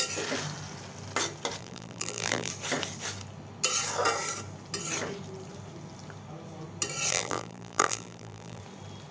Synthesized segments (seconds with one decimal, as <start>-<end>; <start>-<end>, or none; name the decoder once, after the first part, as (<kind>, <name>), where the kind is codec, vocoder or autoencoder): 1.6-2.5 (vocoder, BigVGAN v2); 7.1-8.6